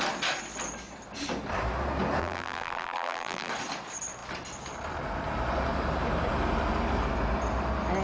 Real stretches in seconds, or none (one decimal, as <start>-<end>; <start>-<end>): 0.0-2.2; 3.5-8.0